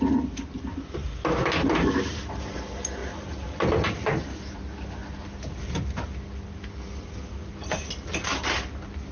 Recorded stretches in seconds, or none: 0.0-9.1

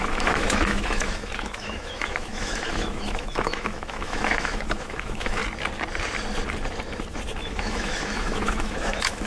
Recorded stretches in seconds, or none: 5.4-7.4

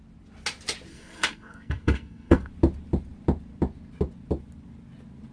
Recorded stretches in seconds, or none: 0.0-0.9; 2.5-5.3

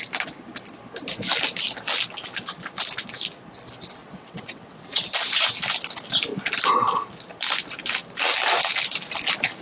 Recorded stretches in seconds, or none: 0.0-4.0; 5.0-9.6